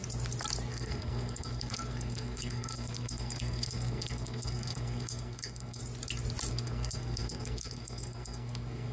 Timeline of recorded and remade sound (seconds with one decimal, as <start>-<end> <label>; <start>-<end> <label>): 0.0-0.7 recorded; 0.7-5.8 remade; 5.8-6.5 recorded; 6.5-8.9 remade